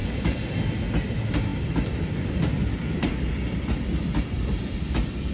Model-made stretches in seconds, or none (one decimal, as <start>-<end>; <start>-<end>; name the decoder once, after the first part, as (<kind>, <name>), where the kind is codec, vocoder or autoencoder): none